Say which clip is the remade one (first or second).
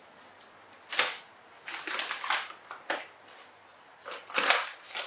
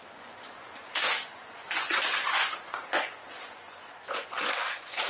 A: second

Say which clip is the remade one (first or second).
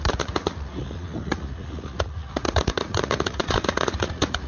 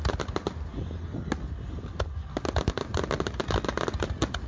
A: first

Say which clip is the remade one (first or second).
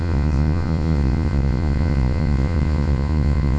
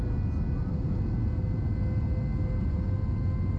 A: first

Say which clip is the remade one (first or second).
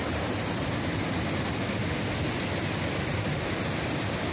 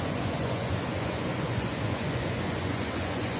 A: second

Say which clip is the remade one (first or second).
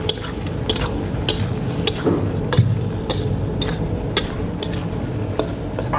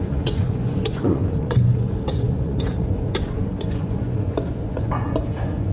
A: second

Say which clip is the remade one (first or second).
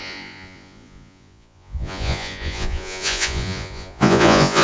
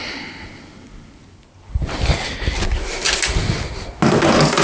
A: first